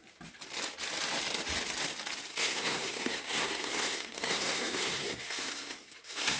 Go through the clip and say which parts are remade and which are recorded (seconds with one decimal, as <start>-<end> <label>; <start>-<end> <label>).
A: 0.0-2.3 recorded; 2.3-6.4 remade

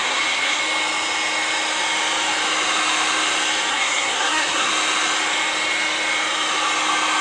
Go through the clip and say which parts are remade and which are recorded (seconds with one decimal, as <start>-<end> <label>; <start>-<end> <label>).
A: 0.0-0.6 remade; 0.6-3.7 recorded; 3.7-4.7 remade; 4.7-7.2 recorded

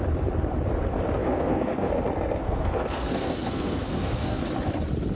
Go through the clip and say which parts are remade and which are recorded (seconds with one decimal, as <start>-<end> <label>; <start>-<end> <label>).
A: 0.0-1.2 recorded; 1.2-1.9 remade; 1.9-2.4 recorded; 2.4-4.4 remade; 4.4-5.2 recorded

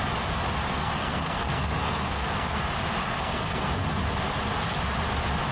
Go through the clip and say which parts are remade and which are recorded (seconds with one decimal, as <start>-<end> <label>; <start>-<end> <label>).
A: 0.0-0.7 recorded; 0.7-2.6 remade; 2.6-3.0 recorded; 3.0-3.7 remade; 3.7-5.5 recorded

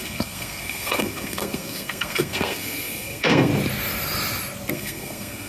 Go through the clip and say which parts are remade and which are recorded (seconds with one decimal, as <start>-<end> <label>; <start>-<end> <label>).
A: 0.0-3.5 remade; 3.5-4.7 recorded; 4.7-5.5 remade